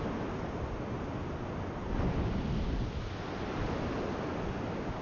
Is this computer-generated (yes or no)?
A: no